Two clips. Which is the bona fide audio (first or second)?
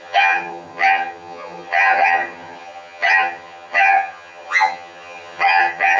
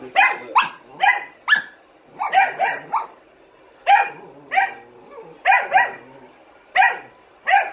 second